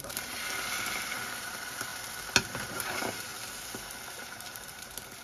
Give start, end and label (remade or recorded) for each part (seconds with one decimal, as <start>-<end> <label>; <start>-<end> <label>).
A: 0.0-0.4 remade; 0.4-1.4 recorded; 1.4-1.9 remade; 1.9-2.5 recorded; 2.5-3.3 remade; 3.3-4.2 recorded; 4.2-5.2 remade